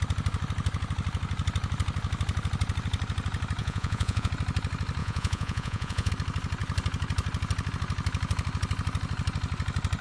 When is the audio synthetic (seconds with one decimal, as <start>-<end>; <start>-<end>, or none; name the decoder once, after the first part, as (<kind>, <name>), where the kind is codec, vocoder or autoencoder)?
3.6-4.3 (vocoder, Vocos); 5.0-6.1